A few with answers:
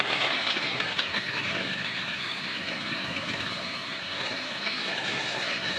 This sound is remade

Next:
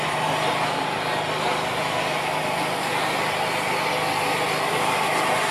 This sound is recorded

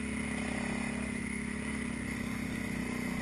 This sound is recorded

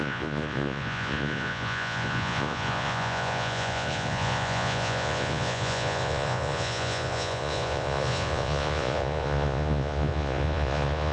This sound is remade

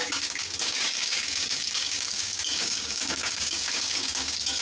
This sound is remade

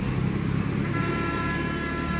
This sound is recorded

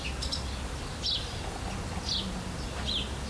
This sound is recorded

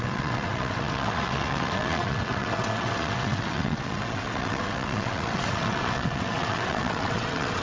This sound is remade